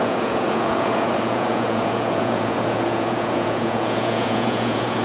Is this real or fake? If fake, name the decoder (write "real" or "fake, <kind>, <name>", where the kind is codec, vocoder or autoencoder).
fake, vocoder, Vocos